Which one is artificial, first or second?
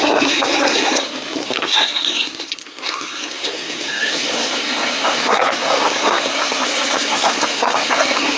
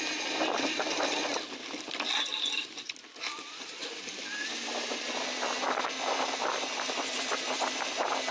first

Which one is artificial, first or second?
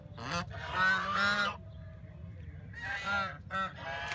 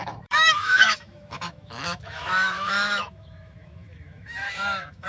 second